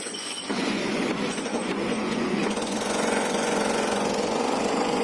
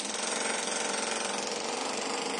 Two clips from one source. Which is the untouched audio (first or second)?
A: second